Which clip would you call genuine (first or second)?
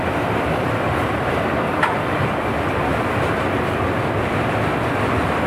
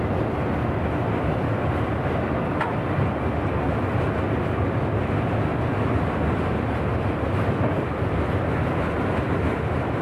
second